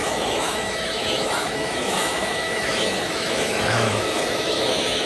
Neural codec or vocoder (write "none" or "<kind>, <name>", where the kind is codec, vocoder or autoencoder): autoencoder, DAC-VAE